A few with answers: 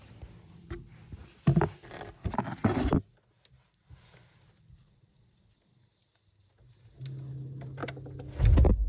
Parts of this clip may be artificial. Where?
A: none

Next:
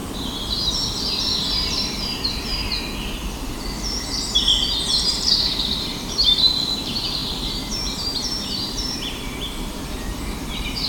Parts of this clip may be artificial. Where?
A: 1.2-2.5 (vocoder, BigVGAN v2); 5.1-10.9

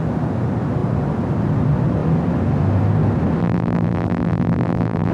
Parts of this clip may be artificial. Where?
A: 3.4-5.1 (vocoder, BigVGAN v2)

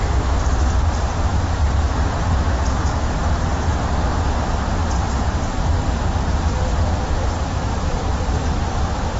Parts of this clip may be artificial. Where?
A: none

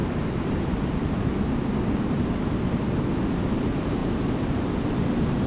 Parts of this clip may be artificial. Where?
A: 3.1-4.0 (vocoder, BigVGAN v2); 4.9-5.5

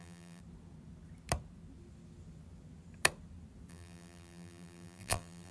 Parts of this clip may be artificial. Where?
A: 0.0-0.4 (vocoder, BigVGAN v2); 3.7-5.5